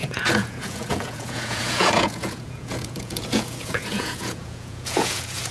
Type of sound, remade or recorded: remade